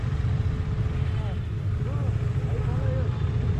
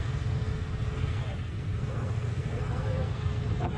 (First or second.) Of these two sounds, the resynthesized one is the second